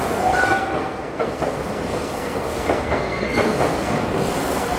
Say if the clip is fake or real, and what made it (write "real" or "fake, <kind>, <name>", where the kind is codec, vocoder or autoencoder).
fake, codec, SNAC